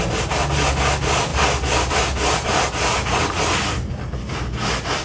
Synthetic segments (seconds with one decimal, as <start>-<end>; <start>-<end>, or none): none